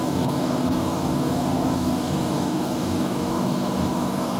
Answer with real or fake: fake